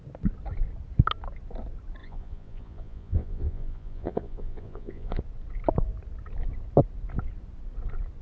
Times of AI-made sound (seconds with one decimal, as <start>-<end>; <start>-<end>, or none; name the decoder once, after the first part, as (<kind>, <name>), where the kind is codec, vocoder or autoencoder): 2.0-5.2 (vocoder, Vocos)